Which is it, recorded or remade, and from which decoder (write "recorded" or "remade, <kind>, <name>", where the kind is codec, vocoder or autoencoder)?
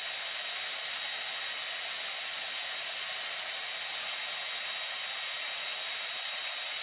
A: recorded